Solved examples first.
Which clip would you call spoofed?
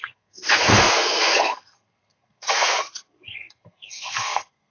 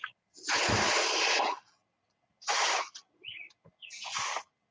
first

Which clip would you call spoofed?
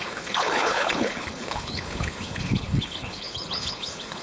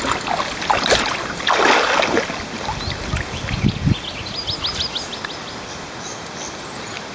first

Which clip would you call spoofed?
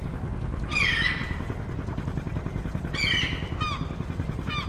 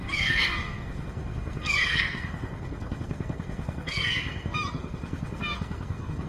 second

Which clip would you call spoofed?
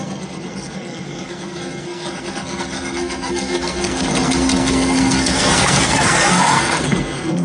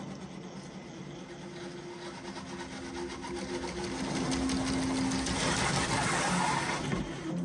first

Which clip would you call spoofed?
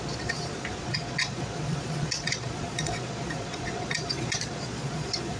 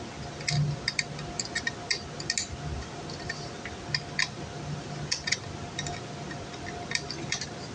first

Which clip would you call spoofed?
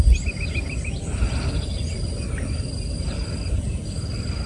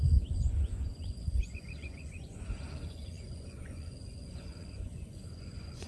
second